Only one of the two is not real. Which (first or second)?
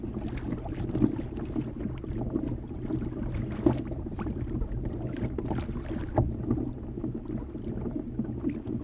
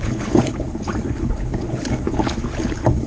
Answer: second